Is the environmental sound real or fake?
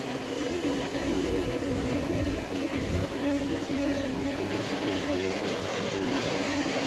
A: fake